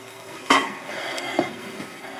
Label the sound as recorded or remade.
remade